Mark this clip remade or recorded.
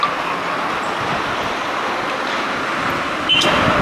recorded